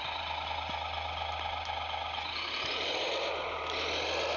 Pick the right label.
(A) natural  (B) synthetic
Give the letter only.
A